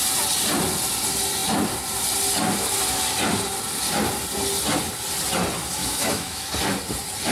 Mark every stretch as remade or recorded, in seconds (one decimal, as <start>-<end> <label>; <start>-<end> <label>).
0.0-5.8 recorded; 5.8-6.5 remade; 6.5-7.3 recorded